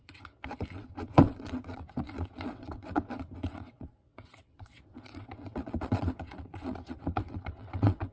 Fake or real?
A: fake